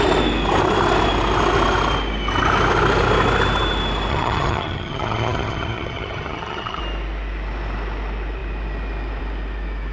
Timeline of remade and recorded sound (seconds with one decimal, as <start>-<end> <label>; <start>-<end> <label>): 0.0-4.1 recorded; 4.1-6.8 remade; 6.8-9.9 recorded